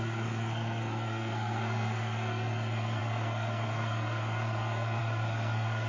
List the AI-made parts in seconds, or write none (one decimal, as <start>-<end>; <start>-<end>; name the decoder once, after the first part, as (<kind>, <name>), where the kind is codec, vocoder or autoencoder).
0.0-5.9 (codec, SNAC)